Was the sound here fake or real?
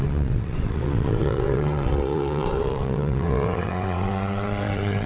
fake